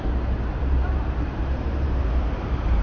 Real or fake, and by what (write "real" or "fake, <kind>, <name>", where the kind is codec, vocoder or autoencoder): fake, vocoder, BigVGAN v2